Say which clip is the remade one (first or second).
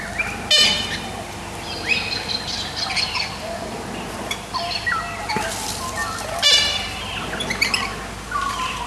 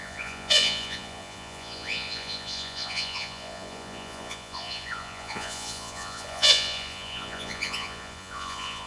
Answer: second